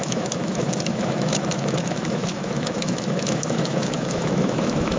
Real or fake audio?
fake